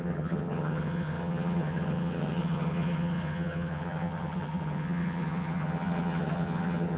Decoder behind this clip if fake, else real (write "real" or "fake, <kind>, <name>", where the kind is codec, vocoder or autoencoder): fake, vocoder, HiFi-GAN